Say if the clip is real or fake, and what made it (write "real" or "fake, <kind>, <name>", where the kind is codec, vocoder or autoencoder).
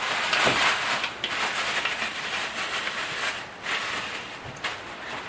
real